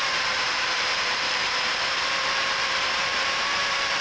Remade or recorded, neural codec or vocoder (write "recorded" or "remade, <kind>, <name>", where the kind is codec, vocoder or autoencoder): remade, vocoder, BigVGAN v2